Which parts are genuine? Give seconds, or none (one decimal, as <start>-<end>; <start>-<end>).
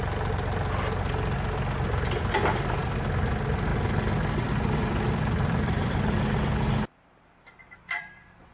0.0-2.8; 3.3-4.8